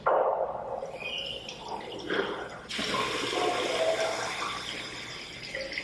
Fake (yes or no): no